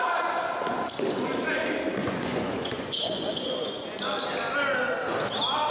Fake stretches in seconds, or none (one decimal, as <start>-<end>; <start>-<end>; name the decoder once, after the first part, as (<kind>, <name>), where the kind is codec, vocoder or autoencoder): 2.0-4.0 (vocoder, Vocos)

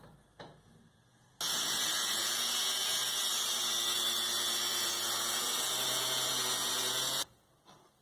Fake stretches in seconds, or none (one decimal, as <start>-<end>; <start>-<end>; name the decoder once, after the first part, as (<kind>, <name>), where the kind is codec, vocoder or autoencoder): 1.5-3.2 (vocoder, Vocos); 4.7-7.5

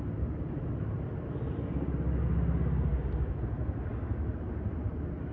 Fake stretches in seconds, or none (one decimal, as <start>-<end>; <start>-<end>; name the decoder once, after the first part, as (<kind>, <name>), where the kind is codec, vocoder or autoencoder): none

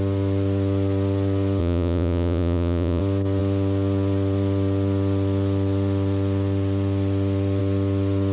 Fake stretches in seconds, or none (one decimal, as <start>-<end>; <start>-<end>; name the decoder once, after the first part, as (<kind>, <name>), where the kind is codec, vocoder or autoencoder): 1.6-3.0 (vocoder, Vocos)